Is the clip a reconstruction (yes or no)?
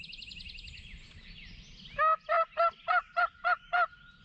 no